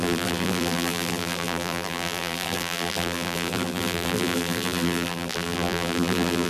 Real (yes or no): no